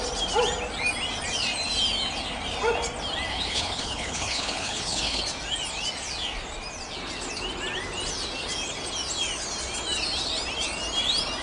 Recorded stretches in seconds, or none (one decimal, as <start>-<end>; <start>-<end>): 0.0-3.3; 5.2-11.4